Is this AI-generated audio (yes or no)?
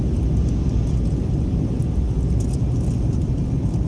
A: no